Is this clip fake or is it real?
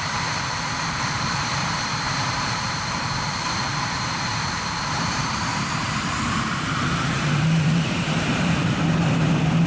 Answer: fake